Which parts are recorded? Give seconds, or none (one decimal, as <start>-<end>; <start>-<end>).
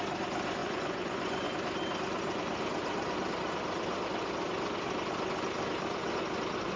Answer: 0.0-0.6; 1.5-6.8